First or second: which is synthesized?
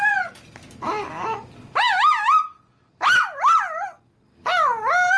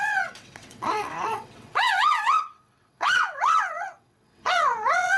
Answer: second